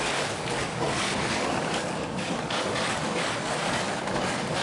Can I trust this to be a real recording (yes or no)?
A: no